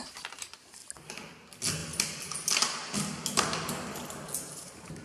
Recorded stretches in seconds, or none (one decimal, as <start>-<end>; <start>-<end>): 0.0-5.0